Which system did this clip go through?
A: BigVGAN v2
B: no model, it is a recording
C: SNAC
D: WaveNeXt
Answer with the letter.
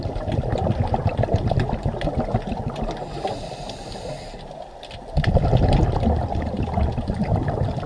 B